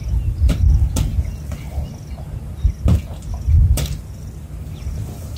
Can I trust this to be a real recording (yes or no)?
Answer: yes